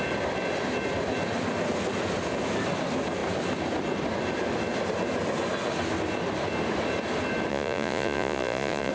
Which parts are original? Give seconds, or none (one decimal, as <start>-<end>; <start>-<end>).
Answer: 0.0-7.5